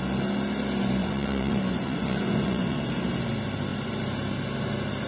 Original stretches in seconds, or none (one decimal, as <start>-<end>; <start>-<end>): 0.0-1.0; 2.9-5.1